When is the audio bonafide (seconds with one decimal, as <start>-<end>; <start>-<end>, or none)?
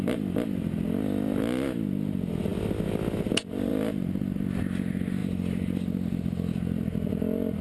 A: 0.0-7.6